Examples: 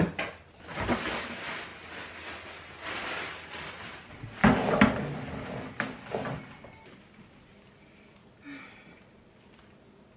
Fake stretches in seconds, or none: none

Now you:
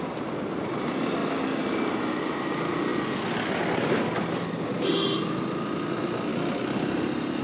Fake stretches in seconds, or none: none

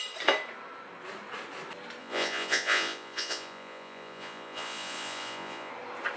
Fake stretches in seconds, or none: 2.0-5.7